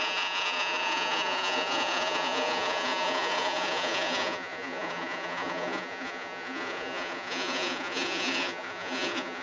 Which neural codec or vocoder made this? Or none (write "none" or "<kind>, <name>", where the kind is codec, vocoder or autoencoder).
vocoder, Vocos